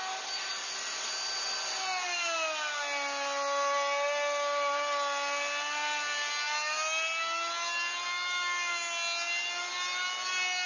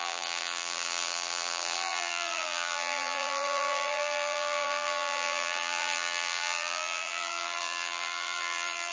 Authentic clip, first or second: first